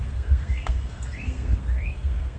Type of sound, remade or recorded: remade